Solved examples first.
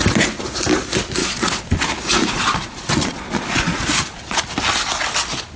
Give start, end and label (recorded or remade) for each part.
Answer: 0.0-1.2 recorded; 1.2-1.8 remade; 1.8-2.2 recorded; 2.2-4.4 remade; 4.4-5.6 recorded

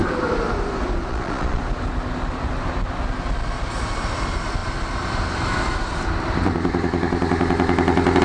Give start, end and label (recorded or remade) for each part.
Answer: 0.0-1.1 recorded; 1.1-1.6 remade; 1.6-8.2 recorded